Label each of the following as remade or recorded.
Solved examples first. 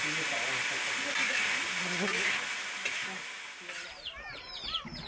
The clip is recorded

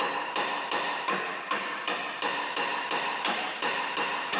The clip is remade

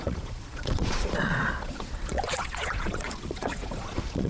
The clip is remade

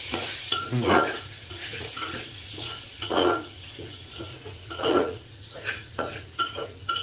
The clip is remade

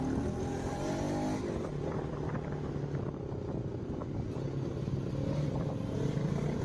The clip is recorded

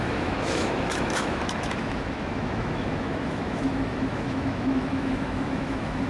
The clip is remade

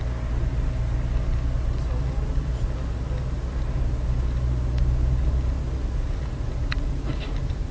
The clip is recorded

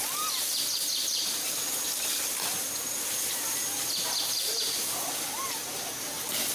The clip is recorded